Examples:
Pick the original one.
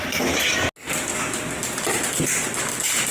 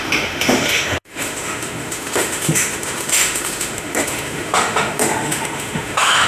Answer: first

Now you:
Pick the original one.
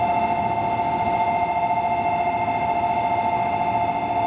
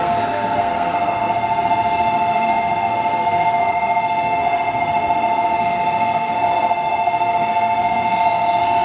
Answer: first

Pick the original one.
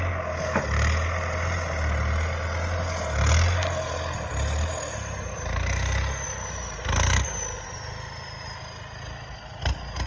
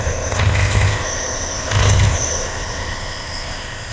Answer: first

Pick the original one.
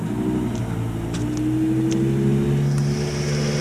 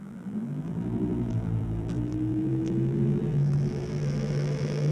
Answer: first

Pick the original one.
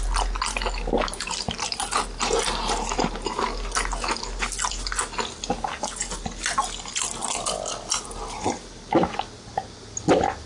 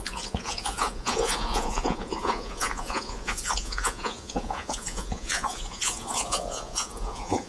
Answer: first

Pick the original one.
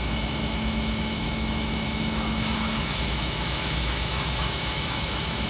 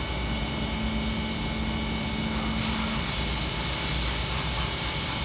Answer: second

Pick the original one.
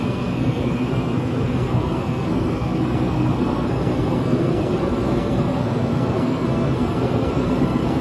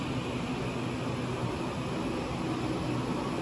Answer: second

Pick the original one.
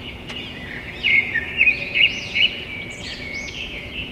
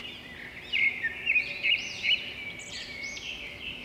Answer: second